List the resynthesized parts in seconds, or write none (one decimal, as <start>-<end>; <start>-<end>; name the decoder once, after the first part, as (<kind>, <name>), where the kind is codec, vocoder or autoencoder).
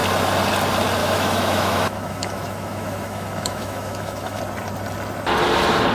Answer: 1.0-4.4 (autoencoder, DAC-VAE)